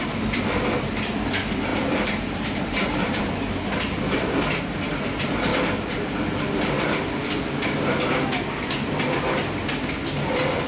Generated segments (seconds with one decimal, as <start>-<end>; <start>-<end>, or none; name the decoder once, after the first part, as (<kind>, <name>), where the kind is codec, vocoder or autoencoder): 1.7-3.2 (vocoder, BigVGAN v2)